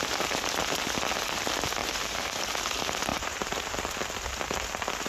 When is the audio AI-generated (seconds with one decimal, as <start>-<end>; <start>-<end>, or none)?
1.8-2.4; 3.1-3.8